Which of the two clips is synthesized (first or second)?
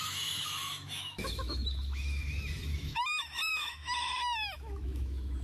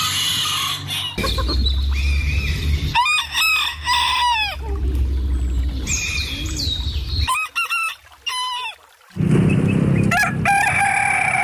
first